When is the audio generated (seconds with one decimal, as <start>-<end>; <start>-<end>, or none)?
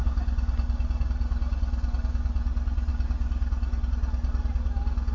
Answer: none